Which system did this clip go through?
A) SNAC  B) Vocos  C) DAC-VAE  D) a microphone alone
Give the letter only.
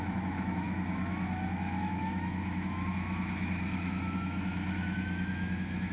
C